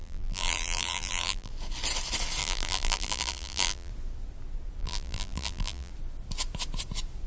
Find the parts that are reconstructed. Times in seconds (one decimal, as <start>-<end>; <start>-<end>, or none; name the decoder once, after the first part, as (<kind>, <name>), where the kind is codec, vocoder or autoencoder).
0.0-1.5 (vocoder, BigVGAN v2); 2.4-3.9; 4.8-5.9